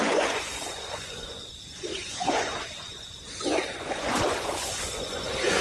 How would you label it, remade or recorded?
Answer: remade